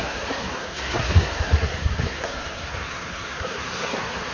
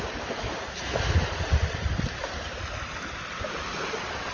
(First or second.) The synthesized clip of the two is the first